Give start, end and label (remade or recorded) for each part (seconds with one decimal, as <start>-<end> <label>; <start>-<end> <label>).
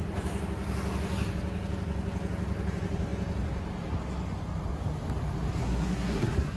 0.0-5.6 recorded; 5.6-6.6 remade